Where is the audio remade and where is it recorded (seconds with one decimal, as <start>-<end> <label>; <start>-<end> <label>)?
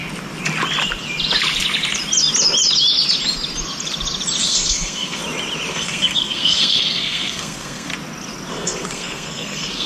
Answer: 0.0-4.4 recorded; 4.4-5.2 remade; 5.2-5.7 recorded; 5.7-7.9 remade; 7.9-8.5 recorded; 8.5-9.9 remade